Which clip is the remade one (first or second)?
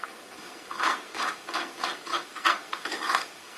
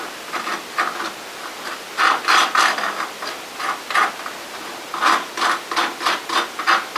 first